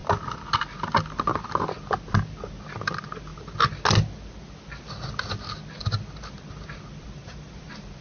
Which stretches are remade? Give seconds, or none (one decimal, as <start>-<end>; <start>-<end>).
none